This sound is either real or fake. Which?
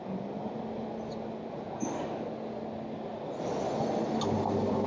real